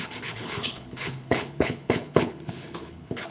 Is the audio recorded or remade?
remade